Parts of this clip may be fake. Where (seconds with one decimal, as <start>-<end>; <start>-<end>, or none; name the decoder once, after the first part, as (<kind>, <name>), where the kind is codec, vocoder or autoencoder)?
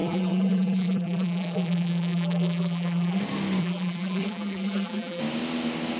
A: 0.0-3.2 (vocoder, BigVGAN v2); 3.6-5.2